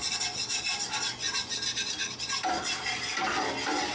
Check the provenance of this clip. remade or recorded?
recorded